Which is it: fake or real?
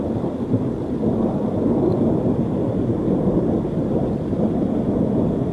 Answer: real